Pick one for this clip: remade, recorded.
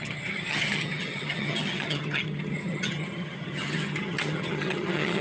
remade